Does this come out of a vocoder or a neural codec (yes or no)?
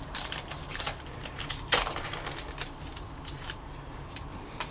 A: yes